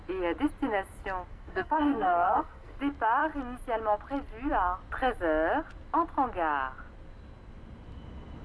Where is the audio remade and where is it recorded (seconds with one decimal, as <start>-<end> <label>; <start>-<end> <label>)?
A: 0.0-1.3 recorded; 1.3-2.8 remade; 2.8-8.4 recorded